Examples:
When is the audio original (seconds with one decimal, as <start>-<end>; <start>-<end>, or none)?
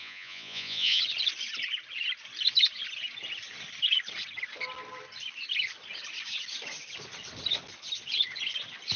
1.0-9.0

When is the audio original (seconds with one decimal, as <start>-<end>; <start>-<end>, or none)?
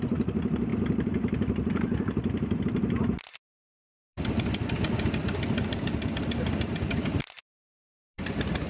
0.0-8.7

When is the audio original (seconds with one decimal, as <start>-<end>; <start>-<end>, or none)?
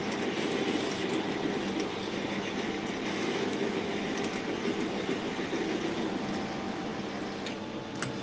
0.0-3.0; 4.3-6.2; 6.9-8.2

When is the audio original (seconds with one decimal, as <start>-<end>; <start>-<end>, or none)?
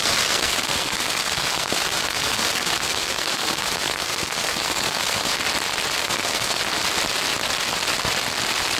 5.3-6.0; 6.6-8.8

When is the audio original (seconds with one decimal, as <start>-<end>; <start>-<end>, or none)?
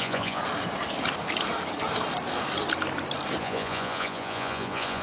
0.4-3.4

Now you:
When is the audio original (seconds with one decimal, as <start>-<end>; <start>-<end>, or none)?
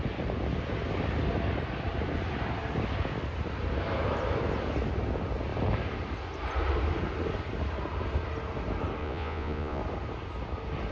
0.0-9.0; 9.8-10.9